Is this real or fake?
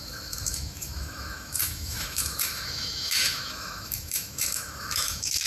fake